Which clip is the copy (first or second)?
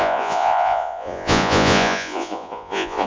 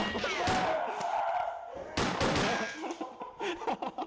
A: first